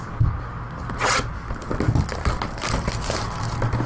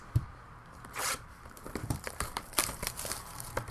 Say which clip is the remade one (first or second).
second